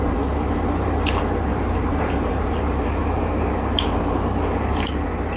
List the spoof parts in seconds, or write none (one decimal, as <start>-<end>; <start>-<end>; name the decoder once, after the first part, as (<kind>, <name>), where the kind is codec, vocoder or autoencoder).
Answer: 1.5-2.5 (vocoder, BigVGAN v2)

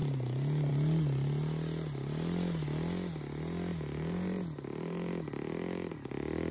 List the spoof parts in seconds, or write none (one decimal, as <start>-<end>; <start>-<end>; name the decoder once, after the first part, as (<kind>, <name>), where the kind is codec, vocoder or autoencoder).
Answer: 3.7-5.1 (vocoder, BigVGAN v2)

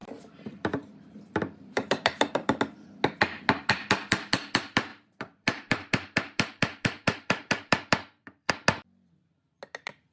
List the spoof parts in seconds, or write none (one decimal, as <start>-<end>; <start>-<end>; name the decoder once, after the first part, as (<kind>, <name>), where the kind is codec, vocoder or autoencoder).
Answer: 0.0-2.6 (vocoder, BigVGAN v2); 4.9-8.5